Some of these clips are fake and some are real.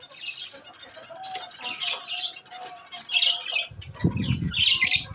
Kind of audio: real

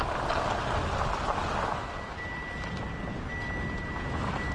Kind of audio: real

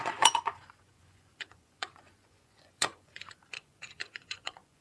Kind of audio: fake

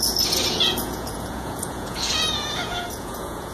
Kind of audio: fake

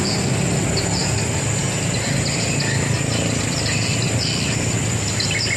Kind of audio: real